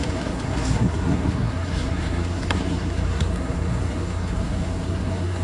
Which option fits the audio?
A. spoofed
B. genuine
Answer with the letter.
A